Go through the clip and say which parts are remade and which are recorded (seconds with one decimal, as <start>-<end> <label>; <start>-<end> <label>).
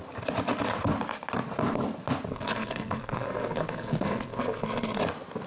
0.0-2.3 recorded; 2.3-5.0 remade; 5.0-5.5 recorded